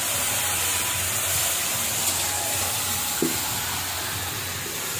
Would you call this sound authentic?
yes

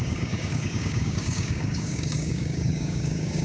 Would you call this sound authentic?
no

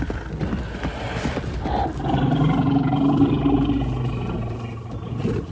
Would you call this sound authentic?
yes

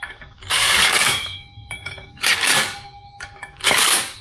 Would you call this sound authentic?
no